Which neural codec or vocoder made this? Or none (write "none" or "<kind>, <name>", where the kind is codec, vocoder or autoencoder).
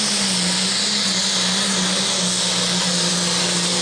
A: none